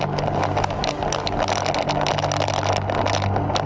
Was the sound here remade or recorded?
recorded